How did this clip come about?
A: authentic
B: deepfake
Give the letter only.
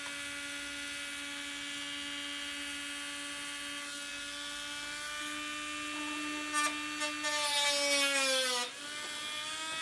A